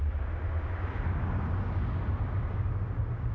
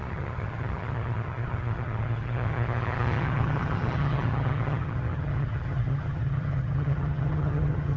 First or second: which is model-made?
second